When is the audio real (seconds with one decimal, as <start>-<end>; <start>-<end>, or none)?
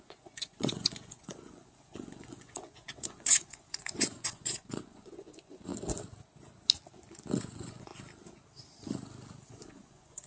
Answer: 5.7-7.4; 7.9-9.5